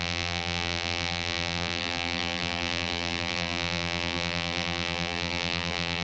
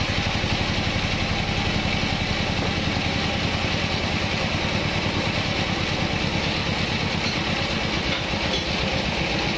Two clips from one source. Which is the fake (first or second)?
first